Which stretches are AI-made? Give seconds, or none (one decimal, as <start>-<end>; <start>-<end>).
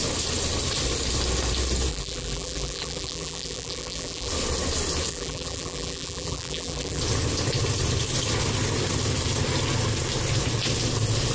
1.9-4.3; 5.1-7.0